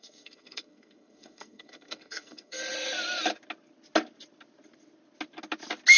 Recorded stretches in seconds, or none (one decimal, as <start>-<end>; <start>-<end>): 2.6-6.0